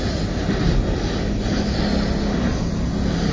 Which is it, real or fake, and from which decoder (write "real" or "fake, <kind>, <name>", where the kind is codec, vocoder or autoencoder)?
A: real